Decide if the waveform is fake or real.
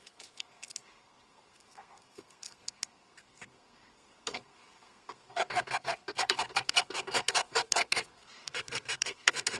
fake